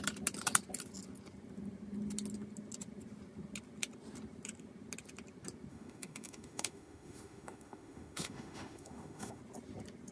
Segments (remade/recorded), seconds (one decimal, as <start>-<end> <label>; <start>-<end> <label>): 0.0-5.7 recorded; 5.7-9.4 remade; 9.4-10.1 recorded